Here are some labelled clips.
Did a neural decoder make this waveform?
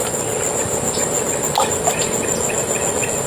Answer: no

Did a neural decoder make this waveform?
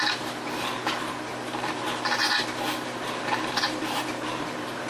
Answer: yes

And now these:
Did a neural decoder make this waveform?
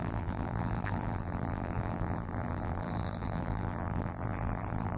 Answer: yes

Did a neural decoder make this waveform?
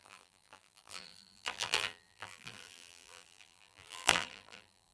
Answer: yes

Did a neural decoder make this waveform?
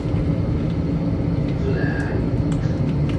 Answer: no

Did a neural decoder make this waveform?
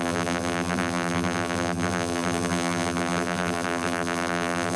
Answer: yes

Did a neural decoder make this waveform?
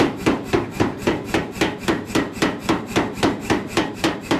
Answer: yes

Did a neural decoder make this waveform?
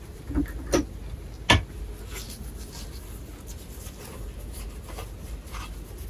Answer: no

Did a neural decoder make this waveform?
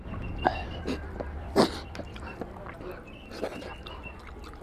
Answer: no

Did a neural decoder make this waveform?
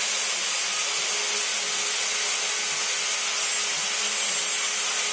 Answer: no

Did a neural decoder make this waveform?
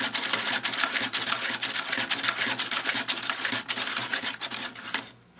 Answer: no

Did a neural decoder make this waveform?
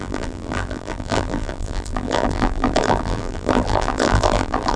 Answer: yes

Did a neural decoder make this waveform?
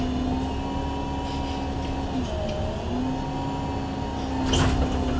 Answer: no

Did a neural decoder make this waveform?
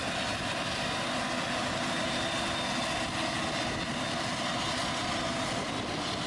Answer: no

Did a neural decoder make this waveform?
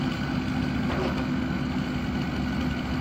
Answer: no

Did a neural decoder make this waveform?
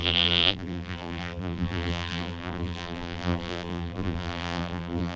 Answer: yes